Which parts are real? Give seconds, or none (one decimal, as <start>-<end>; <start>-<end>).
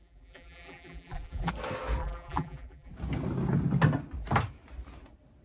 1.5-2.0; 2.9-5.4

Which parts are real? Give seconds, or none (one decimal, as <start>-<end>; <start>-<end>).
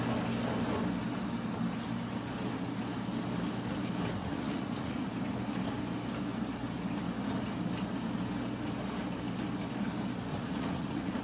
0.0-4.2; 5.1-10.3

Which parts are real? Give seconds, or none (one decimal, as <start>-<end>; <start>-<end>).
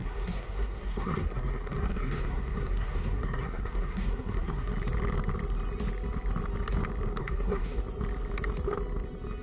4.7-7.2; 7.8-9.4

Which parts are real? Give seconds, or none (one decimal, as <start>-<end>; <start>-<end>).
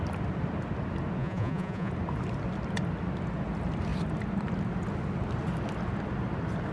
0.0-1.2; 1.9-6.7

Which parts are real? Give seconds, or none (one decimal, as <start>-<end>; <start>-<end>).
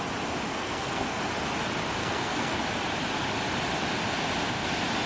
0.0-0.5; 1.2-2.0; 2.6-5.1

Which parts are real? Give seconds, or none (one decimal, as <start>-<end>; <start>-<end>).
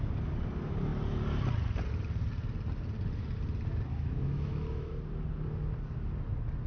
0.0-3.9; 4.9-6.7